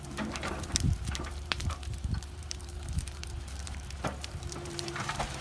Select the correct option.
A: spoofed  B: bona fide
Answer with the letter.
A